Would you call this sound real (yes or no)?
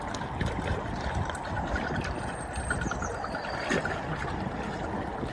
yes